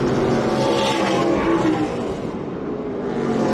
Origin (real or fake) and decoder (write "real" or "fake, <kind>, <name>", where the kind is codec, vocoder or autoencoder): real